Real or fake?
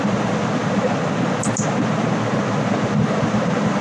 fake